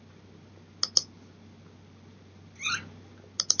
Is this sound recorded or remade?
recorded